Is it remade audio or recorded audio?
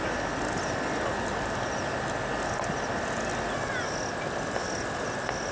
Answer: recorded